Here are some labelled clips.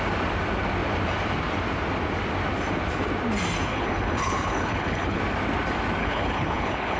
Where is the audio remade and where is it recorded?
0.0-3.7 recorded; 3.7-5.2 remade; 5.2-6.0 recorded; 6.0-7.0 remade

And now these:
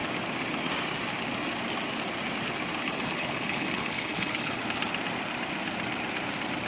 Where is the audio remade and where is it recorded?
0.0-2.8 recorded; 2.8-4.6 remade; 4.6-6.7 recorded